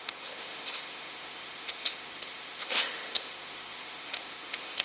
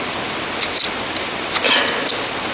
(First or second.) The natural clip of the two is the second